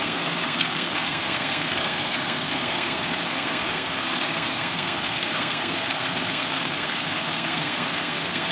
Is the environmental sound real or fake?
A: fake